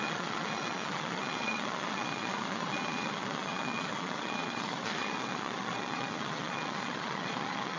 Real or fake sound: fake